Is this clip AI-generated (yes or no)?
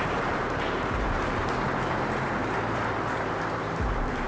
yes